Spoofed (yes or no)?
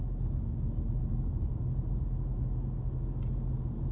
no